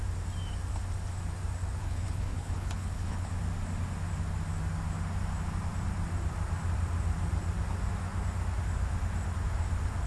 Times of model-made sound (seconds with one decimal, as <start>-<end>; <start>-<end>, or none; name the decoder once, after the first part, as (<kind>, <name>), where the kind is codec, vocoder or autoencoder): 1.8-3.3 (codec, HILCodec)